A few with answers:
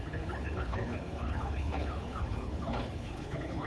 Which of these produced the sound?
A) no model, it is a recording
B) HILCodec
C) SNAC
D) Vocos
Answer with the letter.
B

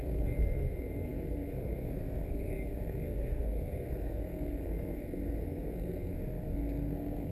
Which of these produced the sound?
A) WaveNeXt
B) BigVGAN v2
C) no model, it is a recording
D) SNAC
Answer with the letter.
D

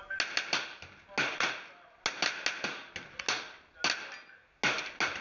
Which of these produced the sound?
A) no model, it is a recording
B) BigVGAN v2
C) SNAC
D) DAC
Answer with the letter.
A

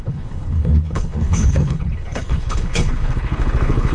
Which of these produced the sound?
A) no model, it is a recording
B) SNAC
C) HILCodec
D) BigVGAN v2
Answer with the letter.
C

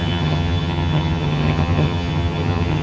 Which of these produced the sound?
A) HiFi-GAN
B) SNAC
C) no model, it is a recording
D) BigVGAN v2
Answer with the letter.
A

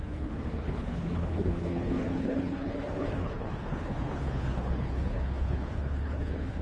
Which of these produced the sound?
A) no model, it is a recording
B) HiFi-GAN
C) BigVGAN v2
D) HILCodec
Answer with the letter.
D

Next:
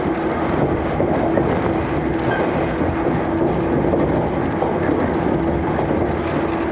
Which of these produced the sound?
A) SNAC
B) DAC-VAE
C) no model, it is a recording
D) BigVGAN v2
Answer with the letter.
C